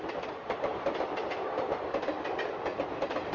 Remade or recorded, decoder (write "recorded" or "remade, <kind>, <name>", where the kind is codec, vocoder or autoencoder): recorded